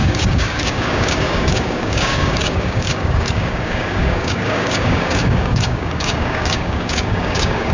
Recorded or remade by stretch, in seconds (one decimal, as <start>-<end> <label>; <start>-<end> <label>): 0.0-7.7 remade